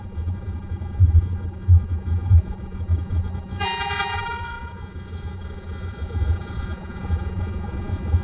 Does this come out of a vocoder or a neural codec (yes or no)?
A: yes